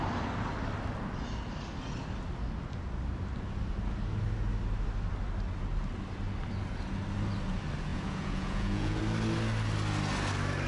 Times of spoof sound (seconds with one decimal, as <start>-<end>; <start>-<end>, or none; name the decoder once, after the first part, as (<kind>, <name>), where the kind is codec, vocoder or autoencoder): 7.9-9.0 (vocoder, Vocos)